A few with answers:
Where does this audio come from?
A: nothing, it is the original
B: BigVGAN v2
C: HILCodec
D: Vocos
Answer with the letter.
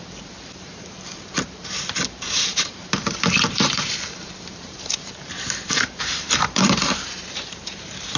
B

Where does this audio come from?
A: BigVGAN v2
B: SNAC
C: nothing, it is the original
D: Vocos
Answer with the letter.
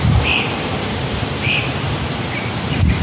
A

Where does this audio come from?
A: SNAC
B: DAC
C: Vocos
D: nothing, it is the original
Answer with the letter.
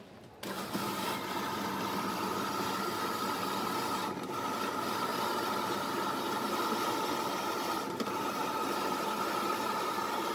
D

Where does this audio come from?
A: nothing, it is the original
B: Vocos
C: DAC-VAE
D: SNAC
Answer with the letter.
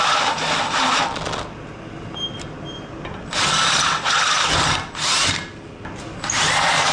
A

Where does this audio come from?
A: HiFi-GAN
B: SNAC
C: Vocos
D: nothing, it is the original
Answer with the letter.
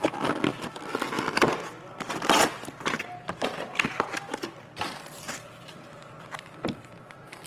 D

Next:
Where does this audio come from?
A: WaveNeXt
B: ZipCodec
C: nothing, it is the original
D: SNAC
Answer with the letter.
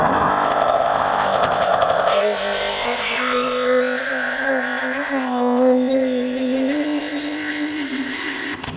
B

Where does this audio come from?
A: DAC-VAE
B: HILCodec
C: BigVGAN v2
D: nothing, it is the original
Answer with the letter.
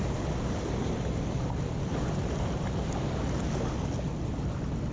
D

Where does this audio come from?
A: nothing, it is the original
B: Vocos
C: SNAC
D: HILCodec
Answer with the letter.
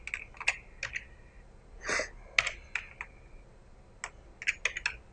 A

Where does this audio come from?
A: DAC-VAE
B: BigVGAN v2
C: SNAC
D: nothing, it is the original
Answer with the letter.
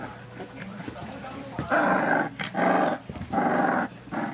D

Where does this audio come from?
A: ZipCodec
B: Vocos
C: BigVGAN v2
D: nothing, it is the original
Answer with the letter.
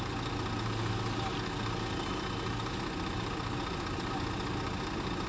D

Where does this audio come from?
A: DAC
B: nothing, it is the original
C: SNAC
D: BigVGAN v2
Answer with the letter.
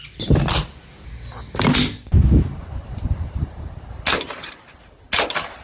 B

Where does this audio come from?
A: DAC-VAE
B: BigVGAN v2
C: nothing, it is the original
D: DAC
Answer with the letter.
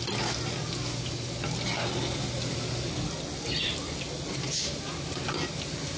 C